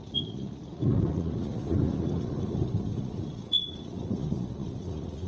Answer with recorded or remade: remade